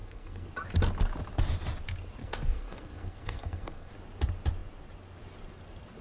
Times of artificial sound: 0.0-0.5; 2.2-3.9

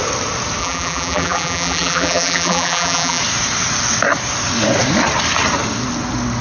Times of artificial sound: 0.6-3.2

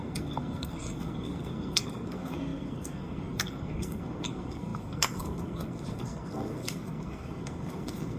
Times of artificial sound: 0.0-8.2

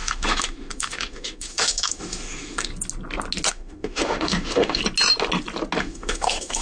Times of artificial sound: 0.0-2.7; 3.5-4.8; 5.8-6.6